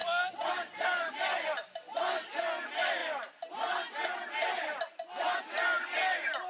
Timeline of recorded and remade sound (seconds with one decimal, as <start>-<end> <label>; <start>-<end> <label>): 0.0-6.5 recorded